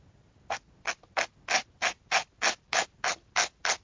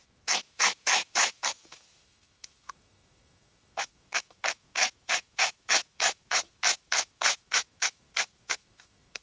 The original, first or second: first